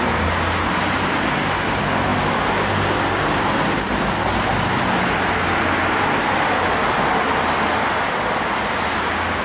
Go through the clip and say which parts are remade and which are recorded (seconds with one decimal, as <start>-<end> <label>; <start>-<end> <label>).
0.0-9.4 recorded